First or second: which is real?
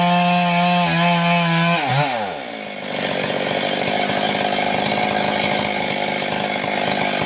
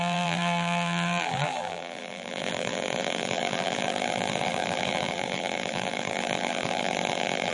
first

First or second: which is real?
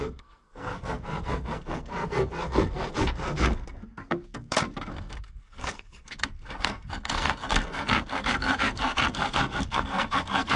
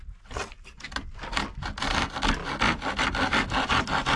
second